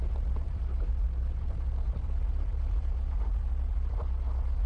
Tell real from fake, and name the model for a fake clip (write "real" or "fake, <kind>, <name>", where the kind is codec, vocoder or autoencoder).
fake, vocoder, BigVGAN v2